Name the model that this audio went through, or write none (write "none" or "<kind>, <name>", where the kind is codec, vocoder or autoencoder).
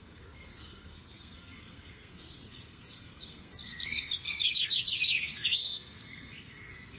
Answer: codec, SNAC